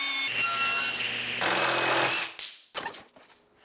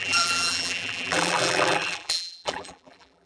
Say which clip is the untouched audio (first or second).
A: first